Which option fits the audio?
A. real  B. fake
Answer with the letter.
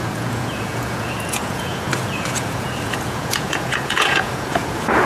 B